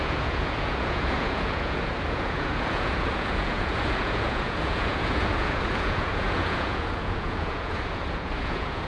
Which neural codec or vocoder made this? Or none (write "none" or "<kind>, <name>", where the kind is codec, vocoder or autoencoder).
vocoder, Vocos